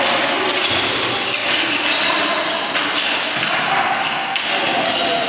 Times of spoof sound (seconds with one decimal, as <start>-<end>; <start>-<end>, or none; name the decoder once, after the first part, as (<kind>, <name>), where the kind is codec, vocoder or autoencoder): 3.7-4.5 (codec, SNAC)